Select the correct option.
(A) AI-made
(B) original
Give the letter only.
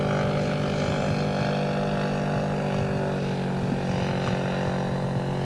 B